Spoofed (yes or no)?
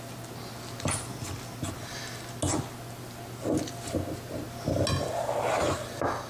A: no